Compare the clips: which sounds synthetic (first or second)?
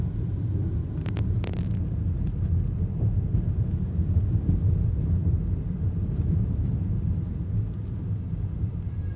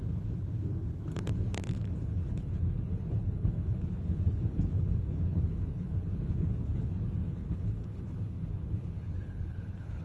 second